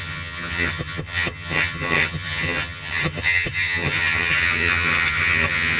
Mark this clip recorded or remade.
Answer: remade